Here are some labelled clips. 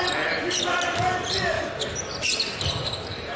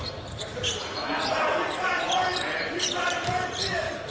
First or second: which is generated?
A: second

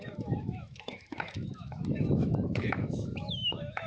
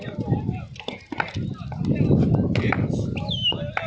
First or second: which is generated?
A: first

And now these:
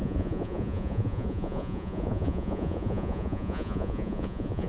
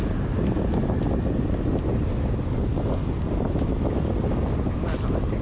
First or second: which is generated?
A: first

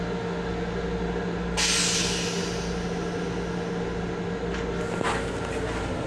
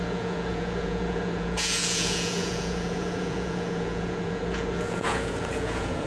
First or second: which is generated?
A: second